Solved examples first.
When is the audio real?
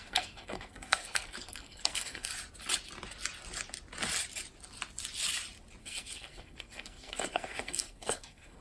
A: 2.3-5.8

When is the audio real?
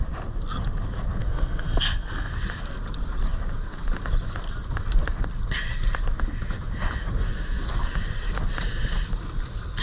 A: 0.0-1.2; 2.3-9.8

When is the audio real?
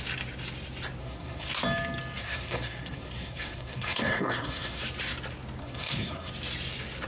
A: 0.0-1.0; 1.5-2.2; 4.8-5.6; 6.3-7.1